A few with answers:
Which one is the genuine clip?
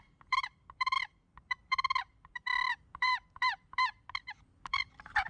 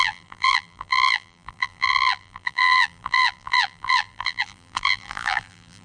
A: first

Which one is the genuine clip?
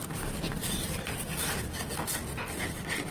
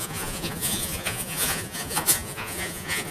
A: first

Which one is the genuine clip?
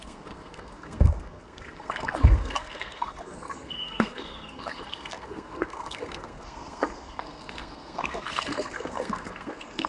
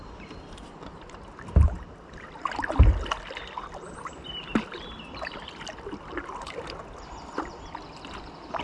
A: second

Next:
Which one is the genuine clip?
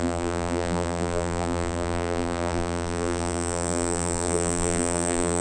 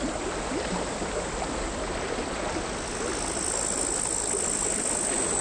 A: second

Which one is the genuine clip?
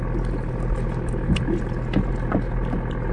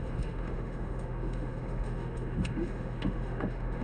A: first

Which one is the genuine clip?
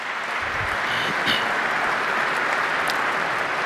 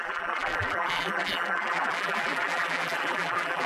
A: first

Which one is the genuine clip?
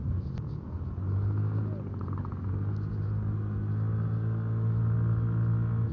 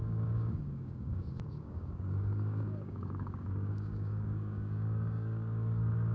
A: first